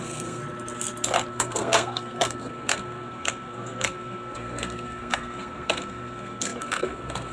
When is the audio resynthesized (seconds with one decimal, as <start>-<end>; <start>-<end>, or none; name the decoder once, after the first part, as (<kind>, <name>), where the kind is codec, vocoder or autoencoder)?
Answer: 0.0-0.4 (codec, SNAC); 1.3-7.3